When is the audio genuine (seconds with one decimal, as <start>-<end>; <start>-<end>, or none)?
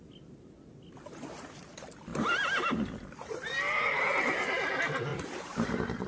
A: 0.0-2.1; 3.6-5.1